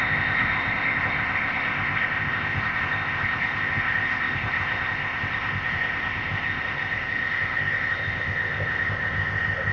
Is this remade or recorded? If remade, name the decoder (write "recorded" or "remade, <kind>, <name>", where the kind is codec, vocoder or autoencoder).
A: remade, codec, ZipCodec